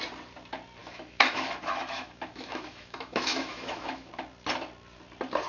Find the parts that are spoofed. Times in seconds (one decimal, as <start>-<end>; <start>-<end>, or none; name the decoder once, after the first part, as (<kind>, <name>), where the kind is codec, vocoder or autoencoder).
0.8-4.1 (autoencoder, DAC-VAE)